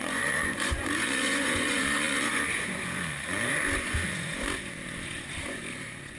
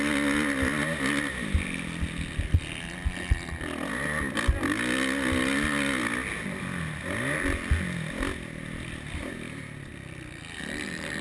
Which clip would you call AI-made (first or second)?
first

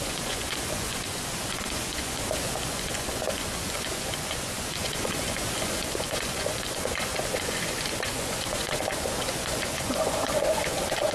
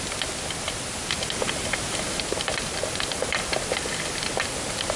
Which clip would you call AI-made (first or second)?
first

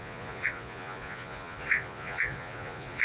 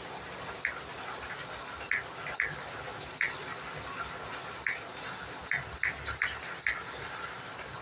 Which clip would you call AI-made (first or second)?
first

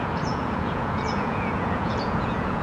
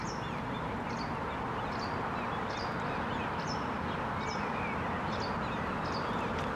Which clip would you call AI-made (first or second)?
first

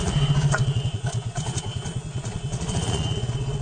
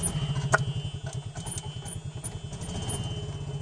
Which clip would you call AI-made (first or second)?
first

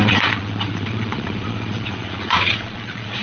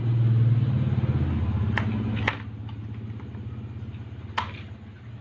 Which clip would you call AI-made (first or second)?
first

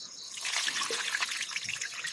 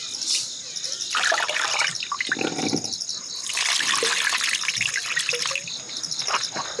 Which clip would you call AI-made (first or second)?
first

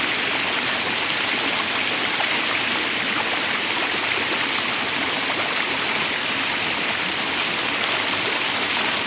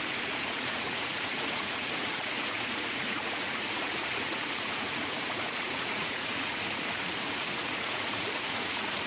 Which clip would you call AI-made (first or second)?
second